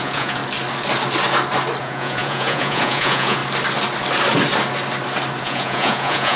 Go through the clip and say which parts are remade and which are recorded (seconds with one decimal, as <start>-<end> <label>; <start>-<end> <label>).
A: 0.0-0.4 remade; 0.4-1.8 recorded; 1.8-3.4 remade; 3.4-5.4 recorded; 5.4-6.4 remade